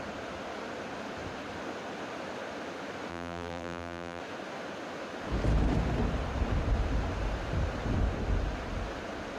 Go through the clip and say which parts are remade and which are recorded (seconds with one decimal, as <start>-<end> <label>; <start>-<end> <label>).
0.0-3.1 recorded; 3.1-4.2 remade; 4.2-9.4 recorded